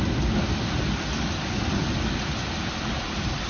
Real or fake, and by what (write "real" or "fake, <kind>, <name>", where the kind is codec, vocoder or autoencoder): real